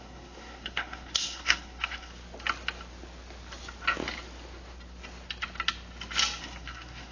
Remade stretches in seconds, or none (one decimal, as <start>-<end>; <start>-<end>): 0.0-2.1; 6.4-7.1